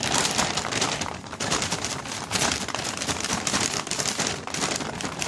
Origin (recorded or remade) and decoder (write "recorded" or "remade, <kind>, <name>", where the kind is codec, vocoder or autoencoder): remade, vocoder, BigVGAN v2